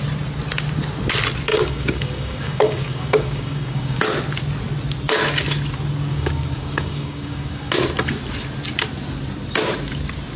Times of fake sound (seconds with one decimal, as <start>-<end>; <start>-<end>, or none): 1.5-4.0; 6.1-7.7